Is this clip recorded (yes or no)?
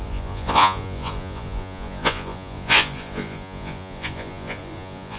no